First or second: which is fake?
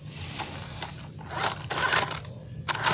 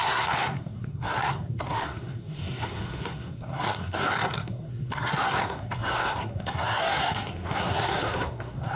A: second